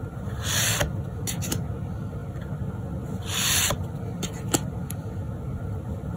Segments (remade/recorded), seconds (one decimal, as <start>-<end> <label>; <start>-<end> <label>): 0.0-2.2 recorded; 2.2-6.2 remade